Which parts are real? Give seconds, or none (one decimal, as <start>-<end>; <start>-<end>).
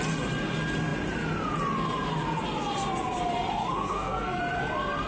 0.0-3.6; 4.4-5.1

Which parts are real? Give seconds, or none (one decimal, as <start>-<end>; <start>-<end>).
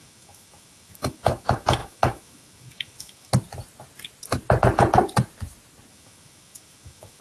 3.3-5.9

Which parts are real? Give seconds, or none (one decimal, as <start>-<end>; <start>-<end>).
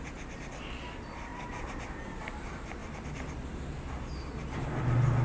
0.0-1.3; 2.2-5.2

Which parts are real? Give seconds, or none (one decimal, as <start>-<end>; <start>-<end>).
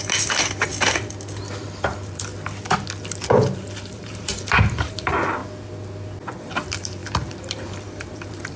0.7-1.6; 2.3-3.9; 5.4-6.4